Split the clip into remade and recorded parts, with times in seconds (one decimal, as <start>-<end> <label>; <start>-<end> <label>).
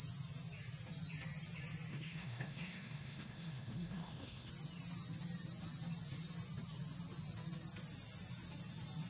0.0-1.9 recorded; 1.9-4.5 remade; 4.5-9.1 recorded